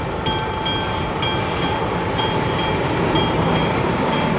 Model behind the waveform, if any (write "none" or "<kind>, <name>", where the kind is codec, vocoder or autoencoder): none